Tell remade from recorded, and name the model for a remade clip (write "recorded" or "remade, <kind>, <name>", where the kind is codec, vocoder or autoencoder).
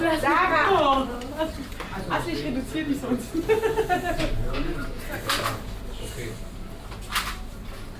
recorded